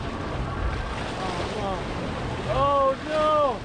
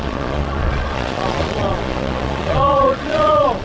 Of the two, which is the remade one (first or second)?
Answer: second